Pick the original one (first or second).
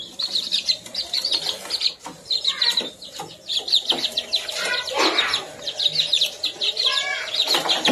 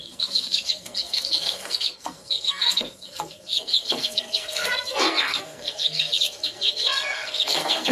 first